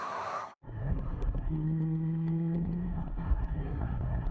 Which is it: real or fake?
fake